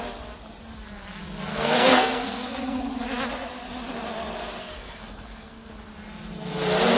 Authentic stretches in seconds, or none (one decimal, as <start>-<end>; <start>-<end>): 0.0-1.5; 2.8-4.6; 5.7-7.0